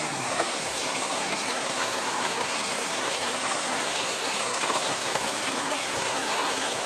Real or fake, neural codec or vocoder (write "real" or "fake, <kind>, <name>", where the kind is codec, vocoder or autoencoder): fake, codec, SNAC